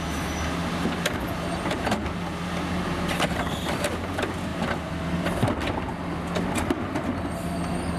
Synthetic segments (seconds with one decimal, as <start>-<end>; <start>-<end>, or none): none